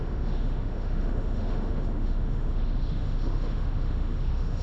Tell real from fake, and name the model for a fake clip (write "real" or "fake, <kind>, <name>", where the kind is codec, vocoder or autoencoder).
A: fake, autoencoder, DAC-VAE